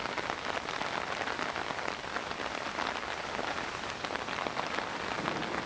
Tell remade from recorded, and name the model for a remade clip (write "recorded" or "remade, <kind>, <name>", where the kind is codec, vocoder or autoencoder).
recorded